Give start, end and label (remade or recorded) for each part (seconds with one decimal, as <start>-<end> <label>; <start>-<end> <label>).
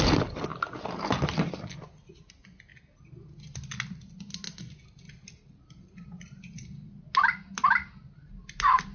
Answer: 0.0-8.9 recorded